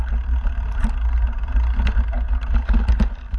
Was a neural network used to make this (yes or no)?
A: no